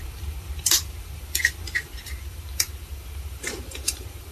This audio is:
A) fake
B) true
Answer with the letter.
A